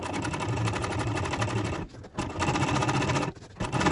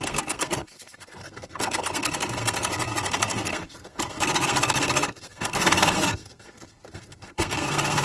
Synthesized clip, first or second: second